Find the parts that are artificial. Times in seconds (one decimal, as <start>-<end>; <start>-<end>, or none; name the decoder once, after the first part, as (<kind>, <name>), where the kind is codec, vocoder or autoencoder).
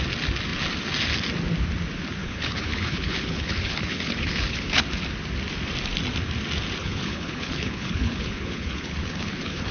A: 2.2-4.8 (codec, HILCodec); 6.8-9.7